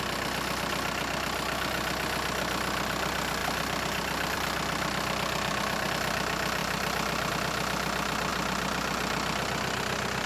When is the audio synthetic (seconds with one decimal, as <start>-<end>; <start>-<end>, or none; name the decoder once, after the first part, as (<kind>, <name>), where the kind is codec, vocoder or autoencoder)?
3.4-5.9 (vocoder, BigVGAN v2); 6.6-7.3; 8.3-10.3